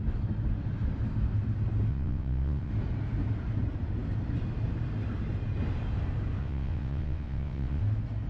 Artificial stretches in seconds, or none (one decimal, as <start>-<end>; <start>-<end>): 1.9-2.7; 6.4-7.8

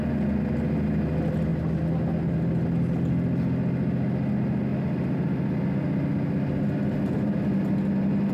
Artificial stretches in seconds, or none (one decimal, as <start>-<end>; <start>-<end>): none

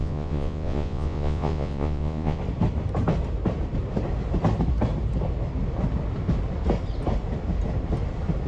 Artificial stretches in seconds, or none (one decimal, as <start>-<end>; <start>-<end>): 0.0-2.4

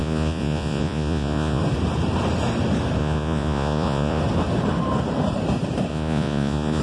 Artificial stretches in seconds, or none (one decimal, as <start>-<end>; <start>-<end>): 0.0-1.6; 3.0-4.2; 5.9-6.8

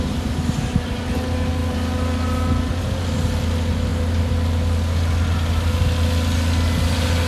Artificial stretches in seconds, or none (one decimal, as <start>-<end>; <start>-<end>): none

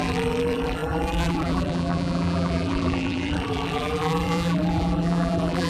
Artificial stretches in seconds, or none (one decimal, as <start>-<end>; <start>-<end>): 0.0-5.7